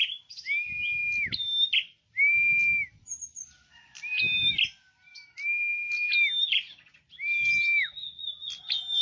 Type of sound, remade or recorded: recorded